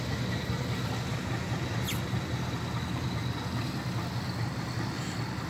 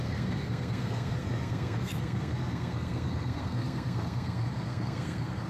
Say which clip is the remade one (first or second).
second